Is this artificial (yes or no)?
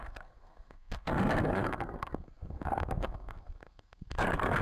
yes